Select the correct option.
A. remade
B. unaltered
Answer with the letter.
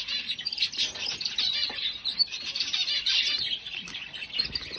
A